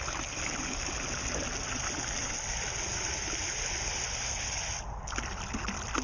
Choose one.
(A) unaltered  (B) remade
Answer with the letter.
A